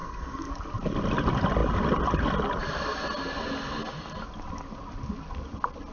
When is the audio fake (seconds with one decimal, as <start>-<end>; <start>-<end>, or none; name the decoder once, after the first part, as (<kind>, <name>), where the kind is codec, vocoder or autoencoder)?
0.0-0.5 (codec, SNAC)